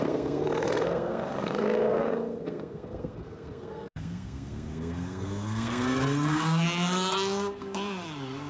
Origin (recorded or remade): remade